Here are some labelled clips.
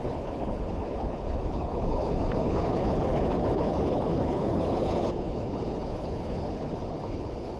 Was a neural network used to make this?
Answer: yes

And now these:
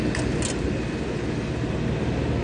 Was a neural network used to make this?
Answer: no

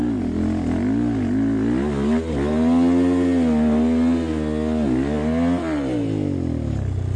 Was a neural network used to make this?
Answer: no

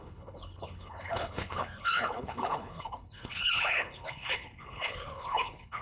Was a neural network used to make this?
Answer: yes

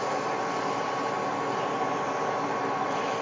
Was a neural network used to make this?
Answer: no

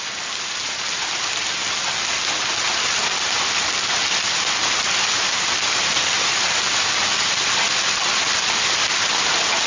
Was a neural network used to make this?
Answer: no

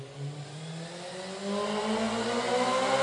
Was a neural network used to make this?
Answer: no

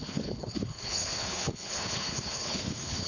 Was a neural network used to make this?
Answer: yes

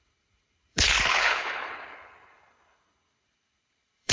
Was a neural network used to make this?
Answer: yes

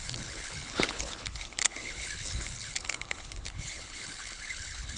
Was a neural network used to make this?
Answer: yes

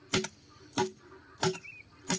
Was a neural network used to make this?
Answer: no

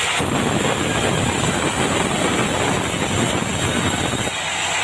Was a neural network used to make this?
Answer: no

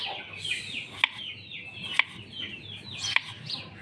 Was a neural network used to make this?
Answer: no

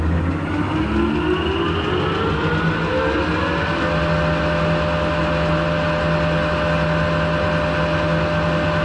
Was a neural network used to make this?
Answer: no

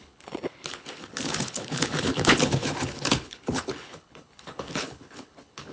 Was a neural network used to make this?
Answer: yes